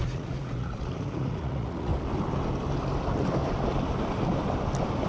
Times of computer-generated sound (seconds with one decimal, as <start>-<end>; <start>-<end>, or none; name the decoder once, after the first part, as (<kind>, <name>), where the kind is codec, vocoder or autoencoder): 0.0-1.9 (vocoder, Vocos)